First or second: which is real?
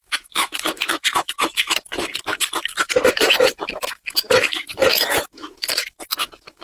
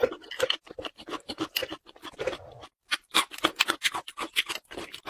second